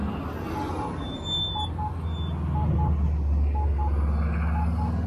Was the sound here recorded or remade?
recorded